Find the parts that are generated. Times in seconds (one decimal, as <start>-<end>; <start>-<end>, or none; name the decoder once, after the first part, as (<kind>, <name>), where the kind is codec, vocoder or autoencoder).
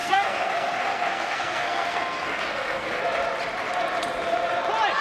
0.0-3.0 (codec, SNAC)